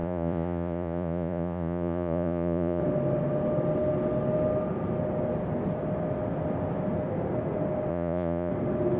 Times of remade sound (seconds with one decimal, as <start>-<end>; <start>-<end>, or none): 0.0-2.8; 7.9-8.5